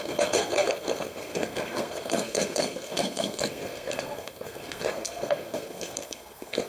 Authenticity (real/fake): fake